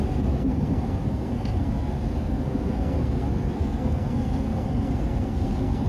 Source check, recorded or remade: remade